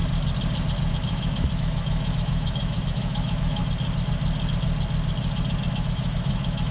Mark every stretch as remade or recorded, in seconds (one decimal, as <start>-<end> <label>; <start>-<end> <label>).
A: 0.0-0.9 recorded; 0.9-3.6 remade; 3.6-5.7 recorded; 5.7-6.7 remade